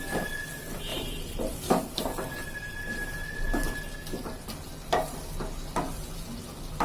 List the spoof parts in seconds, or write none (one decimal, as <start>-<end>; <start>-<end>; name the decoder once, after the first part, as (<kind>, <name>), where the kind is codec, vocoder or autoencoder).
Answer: 0.9-1.7 (vocoder, BigVGAN v2)